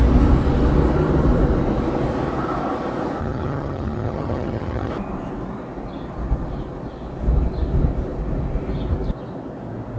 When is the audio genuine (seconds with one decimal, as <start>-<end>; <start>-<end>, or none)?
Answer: 0.0-3.2; 4.9-10.0